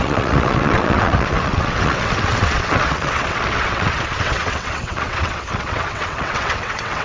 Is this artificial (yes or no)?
yes